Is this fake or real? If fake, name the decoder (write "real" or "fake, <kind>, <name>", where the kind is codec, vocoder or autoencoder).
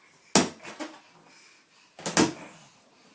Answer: real